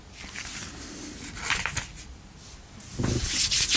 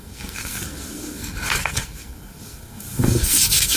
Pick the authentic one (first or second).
first